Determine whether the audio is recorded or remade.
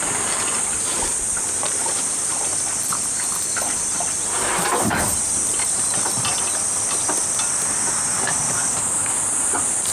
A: remade